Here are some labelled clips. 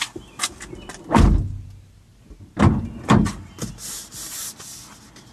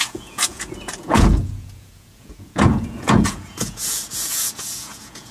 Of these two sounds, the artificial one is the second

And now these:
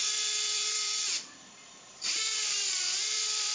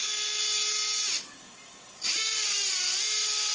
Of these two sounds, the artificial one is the first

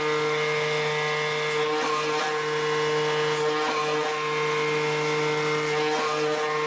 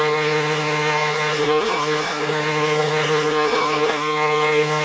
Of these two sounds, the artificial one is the second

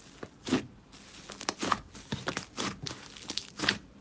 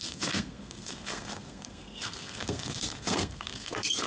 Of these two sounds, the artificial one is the second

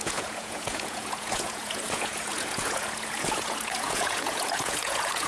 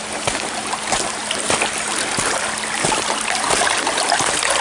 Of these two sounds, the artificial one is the first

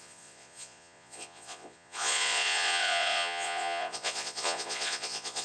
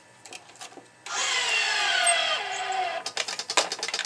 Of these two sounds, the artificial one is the first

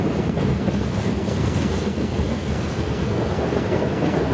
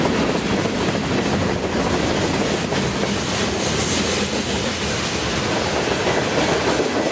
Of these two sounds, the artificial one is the first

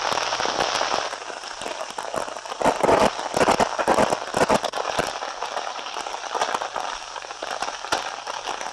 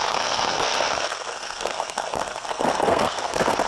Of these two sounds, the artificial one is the second